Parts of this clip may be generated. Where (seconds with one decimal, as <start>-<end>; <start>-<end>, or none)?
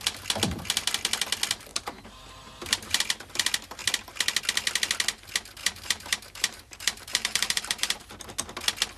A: 1.7-3.0; 5.6-8.1